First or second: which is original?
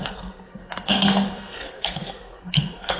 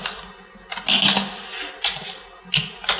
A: second